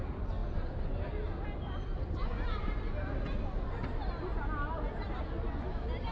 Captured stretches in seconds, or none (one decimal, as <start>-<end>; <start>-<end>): 0.0-6.1